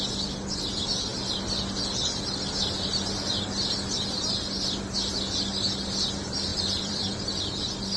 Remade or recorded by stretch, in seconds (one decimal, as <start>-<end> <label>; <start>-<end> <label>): 0.0-6.5 recorded; 6.5-7.6 remade; 7.6-8.0 recorded